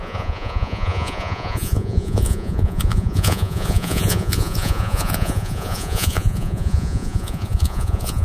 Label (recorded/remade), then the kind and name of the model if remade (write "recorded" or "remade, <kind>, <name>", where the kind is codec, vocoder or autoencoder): remade, vocoder, Vocos